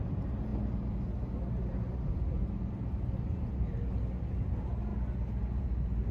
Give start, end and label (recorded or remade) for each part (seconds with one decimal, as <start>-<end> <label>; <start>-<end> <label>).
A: 0.0-0.5 remade; 0.5-4.2 recorded; 4.2-4.9 remade; 4.9-5.6 recorded; 5.6-6.1 remade